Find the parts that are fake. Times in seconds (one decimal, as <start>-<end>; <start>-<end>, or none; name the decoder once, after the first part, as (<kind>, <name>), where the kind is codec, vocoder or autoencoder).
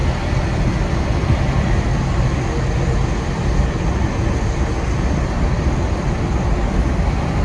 none